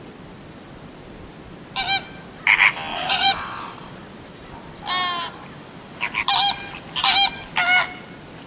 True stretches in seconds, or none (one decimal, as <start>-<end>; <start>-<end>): 0.0-2.9; 4.0-8.5